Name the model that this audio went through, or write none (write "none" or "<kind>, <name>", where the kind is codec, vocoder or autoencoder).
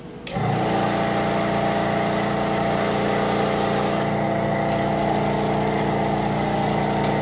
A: none